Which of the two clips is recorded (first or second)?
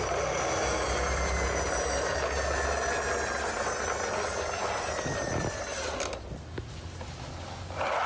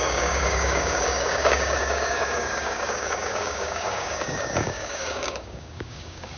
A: first